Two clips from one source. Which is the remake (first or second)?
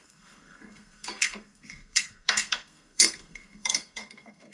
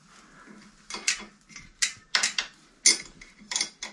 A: first